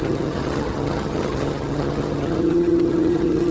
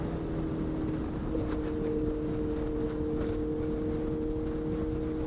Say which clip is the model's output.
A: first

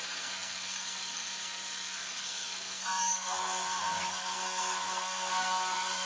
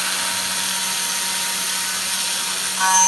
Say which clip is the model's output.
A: first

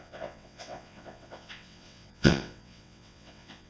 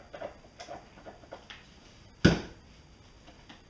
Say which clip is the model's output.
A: first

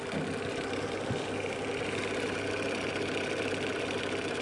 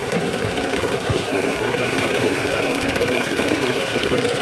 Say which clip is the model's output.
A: second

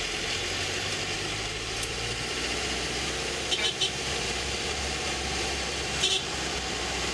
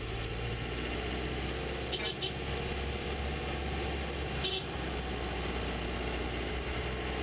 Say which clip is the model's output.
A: first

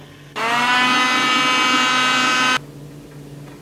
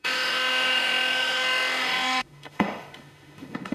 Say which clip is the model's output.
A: second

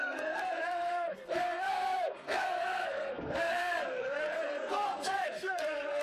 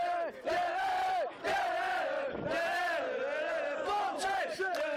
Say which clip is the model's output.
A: first